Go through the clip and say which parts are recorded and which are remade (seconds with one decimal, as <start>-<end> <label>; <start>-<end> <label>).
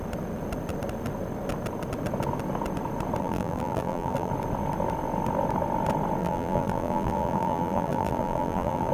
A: 0.0-3.2 recorded; 3.2-4.3 remade; 4.3-6.2 recorded; 6.2-8.9 remade